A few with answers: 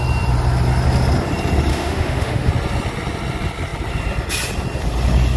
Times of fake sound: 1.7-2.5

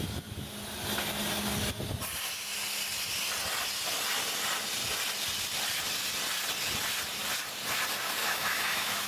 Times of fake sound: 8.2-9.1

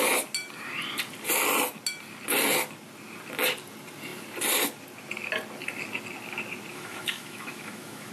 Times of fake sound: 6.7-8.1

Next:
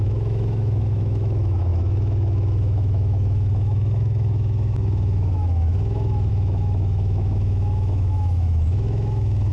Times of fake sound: 0.0-9.5

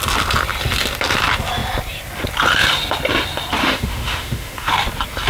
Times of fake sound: 3.6-4.7